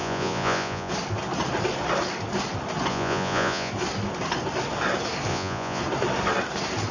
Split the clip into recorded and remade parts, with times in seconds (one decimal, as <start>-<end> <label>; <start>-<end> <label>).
0.0-0.9 remade; 0.9-2.9 recorded; 2.9-3.7 remade; 3.7-5.3 recorded; 5.3-5.8 remade; 5.8-6.9 recorded